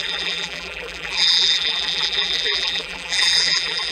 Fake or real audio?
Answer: fake